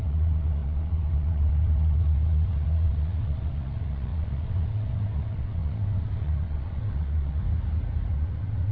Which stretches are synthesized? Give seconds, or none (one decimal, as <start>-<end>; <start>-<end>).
0.0-7.4; 8.1-8.7